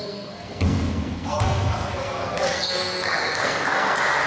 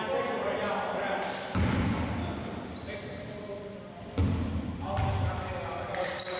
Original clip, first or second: second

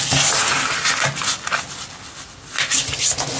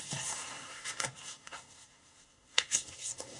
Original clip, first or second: first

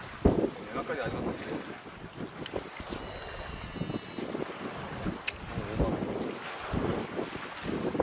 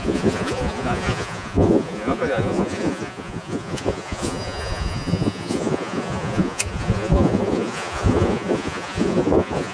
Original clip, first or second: first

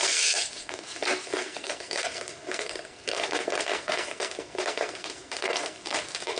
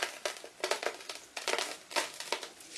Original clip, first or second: second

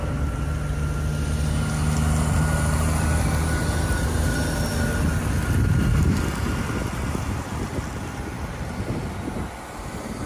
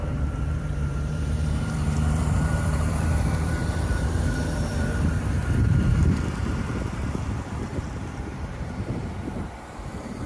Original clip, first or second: first